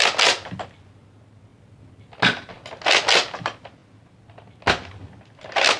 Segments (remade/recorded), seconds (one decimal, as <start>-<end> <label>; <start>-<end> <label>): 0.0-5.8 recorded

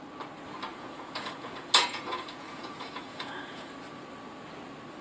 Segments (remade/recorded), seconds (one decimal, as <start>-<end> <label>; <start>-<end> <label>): 0.0-0.7 recorded; 0.7-3.7 remade; 3.7-5.0 recorded

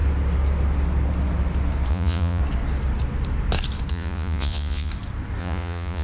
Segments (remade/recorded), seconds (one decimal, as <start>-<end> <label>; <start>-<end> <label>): 0.0-1.9 recorded; 1.9-2.4 remade; 2.4-3.9 recorded; 3.9-4.9 remade; 4.9-5.4 recorded; 5.4-6.0 remade

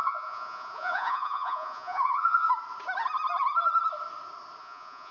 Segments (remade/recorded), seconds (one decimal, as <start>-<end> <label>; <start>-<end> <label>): 0.0-2.5 remade; 2.5-4.6 recorded; 4.6-5.1 remade

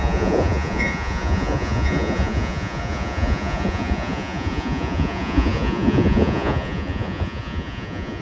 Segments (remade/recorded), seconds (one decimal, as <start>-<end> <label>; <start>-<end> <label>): 0.0-8.2 remade

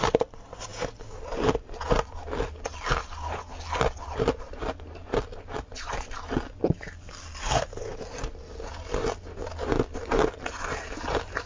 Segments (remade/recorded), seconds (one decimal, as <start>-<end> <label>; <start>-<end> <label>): 0.0-11.5 recorded

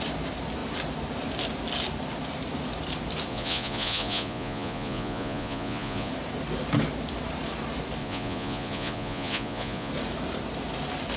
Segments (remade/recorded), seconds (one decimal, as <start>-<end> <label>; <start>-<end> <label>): 0.0-3.3 recorded; 3.3-6.1 remade; 6.1-8.0 recorded; 8.0-9.9 remade; 9.9-11.2 recorded

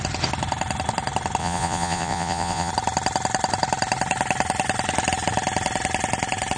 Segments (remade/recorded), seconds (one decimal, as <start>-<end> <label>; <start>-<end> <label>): 0.0-1.4 recorded; 1.4-2.7 remade; 2.7-6.6 recorded